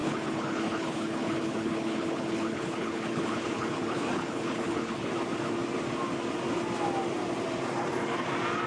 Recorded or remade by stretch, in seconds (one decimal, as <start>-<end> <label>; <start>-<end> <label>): 0.0-5.1 remade; 5.1-8.7 recorded